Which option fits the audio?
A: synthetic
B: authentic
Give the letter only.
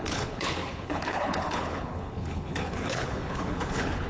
A